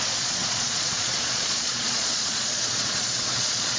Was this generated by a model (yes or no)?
yes